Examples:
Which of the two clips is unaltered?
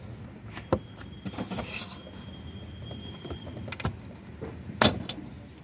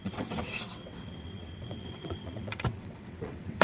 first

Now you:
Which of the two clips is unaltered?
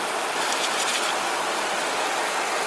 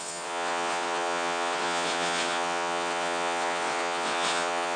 first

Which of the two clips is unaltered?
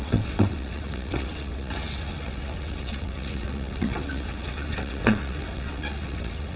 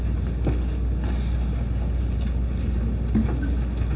second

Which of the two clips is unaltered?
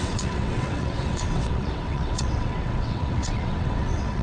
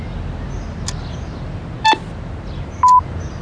second